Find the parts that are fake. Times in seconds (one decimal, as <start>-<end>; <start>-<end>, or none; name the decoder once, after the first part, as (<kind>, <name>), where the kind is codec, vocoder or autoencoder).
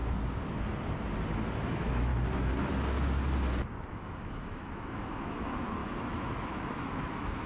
1.3-2.1 (autoencoder, DAC-VAE); 3.9-7.5